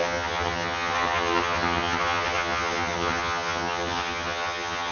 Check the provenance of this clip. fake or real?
fake